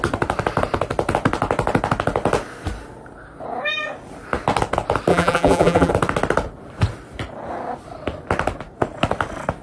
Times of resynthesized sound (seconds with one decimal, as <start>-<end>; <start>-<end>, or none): 5.1-5.9